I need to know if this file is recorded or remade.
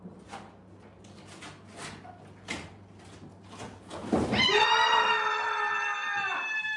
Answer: recorded